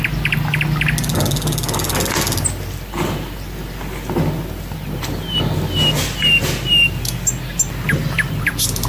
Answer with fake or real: real